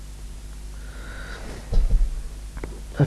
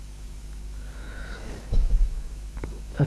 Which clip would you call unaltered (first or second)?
first